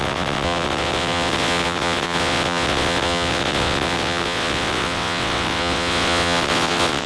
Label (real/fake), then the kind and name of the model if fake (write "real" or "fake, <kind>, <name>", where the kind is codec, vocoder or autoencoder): fake, vocoder, WaveNeXt